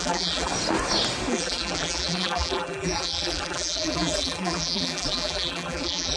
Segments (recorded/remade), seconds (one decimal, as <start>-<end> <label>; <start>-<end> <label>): 0.0-0.5 remade; 0.5-1.3 recorded; 1.3-6.2 remade